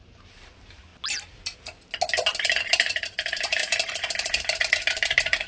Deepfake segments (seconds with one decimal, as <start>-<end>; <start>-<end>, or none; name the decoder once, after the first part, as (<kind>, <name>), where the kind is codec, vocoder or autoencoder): 0.0-0.9 (vocoder, BigVGAN v2); 2.7-5.5